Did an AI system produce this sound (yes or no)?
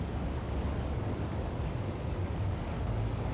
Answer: yes